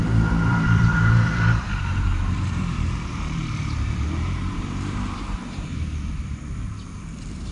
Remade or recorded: remade